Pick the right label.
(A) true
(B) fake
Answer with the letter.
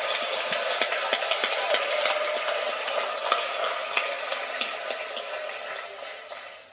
A